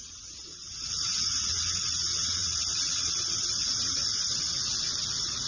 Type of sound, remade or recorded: remade